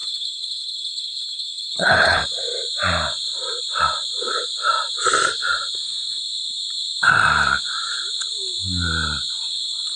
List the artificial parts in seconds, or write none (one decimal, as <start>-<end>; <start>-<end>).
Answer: 0.0-2.2